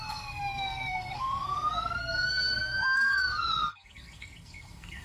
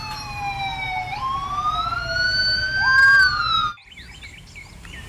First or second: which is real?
second